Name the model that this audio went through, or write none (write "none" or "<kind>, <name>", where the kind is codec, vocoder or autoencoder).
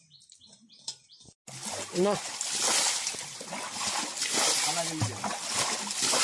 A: none